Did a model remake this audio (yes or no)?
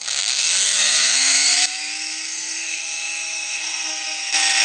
yes